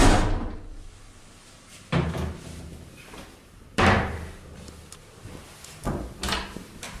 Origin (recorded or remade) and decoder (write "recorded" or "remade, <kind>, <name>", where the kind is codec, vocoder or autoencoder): recorded